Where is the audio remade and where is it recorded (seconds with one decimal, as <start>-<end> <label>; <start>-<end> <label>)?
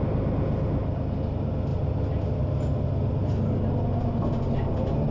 0.0-5.1 recorded